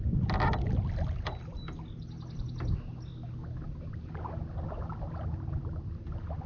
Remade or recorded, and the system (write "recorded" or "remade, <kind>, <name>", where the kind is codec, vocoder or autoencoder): recorded